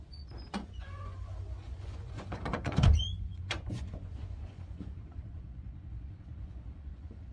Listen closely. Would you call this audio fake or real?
fake